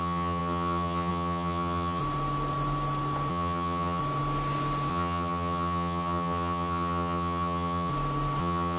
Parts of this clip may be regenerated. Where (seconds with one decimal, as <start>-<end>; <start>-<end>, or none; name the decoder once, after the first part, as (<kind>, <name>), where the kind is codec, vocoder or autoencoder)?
0.0-2.0 (vocoder, HiFi-GAN); 3.3-4.0; 4.9-7.9; 8.4-8.8